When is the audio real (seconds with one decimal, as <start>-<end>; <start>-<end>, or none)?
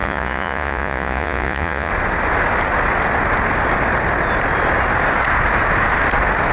1.9-6.5